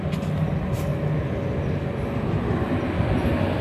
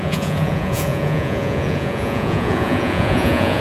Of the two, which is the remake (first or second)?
second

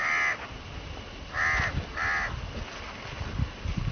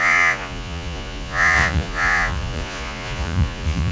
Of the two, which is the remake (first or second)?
second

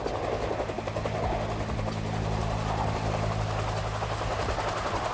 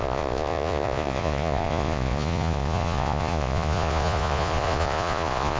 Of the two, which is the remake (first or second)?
second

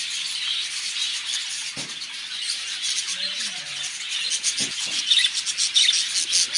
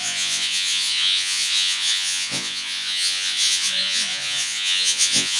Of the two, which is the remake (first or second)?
second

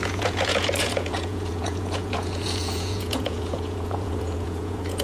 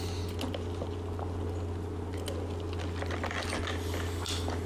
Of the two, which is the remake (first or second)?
first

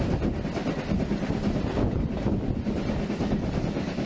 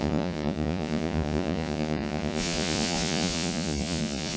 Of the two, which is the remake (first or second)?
second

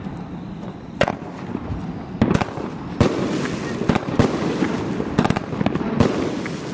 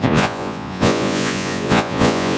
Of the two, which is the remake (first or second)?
second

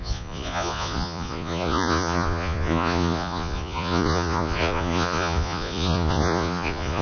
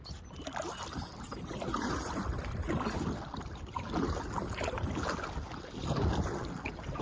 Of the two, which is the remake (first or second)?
first